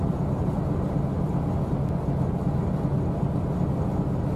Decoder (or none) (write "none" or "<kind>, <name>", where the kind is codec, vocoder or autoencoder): none